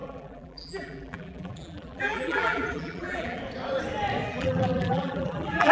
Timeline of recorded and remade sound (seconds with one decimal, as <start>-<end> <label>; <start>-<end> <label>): 0.0-3.4 remade; 3.4-4.3 recorded; 4.3-5.7 remade